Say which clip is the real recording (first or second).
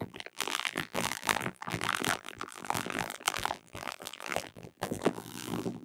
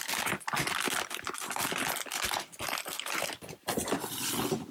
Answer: second